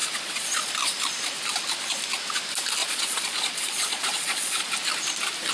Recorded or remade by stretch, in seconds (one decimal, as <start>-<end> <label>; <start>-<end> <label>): 0.0-0.7 remade; 0.7-2.8 recorded; 2.8-4.7 remade; 4.7-5.5 recorded